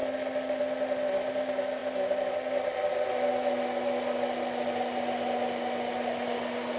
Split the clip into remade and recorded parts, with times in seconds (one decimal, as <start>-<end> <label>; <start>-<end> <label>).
0.0-6.8 recorded

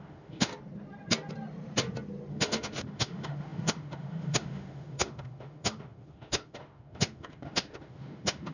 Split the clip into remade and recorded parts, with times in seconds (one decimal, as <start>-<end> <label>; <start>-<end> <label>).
0.0-0.5 remade; 0.5-2.3 recorded; 2.3-8.5 remade

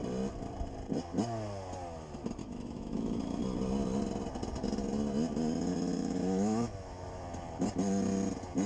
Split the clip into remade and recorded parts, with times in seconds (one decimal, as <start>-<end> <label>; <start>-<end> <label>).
0.0-2.4 recorded; 2.4-3.4 remade; 3.4-5.7 recorded; 5.7-7.2 remade; 7.2-8.7 recorded